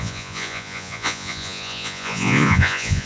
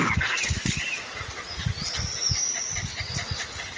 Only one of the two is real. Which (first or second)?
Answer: second